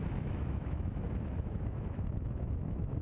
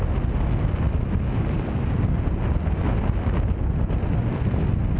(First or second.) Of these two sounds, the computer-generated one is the first